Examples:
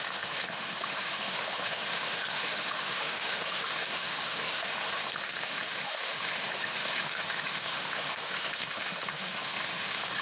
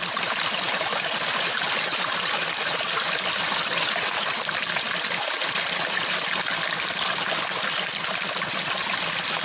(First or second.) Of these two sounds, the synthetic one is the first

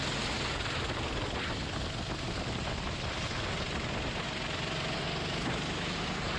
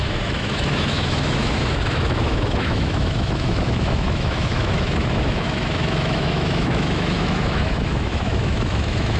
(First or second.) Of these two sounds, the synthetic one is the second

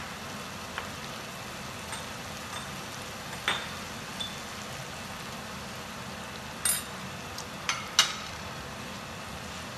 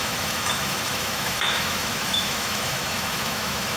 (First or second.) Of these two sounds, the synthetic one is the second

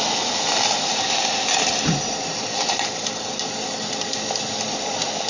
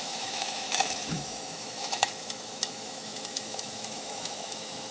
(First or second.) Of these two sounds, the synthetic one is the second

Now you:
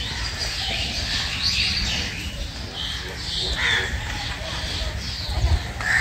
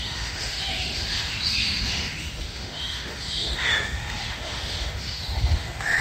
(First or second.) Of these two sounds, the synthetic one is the second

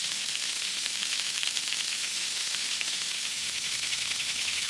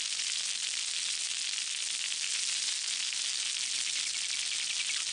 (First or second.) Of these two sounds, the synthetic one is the first